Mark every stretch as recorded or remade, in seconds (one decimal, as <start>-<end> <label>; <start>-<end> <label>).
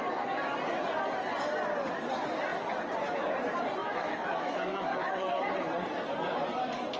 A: 0.0-3.8 recorded; 3.8-5.4 remade; 5.4-7.0 recorded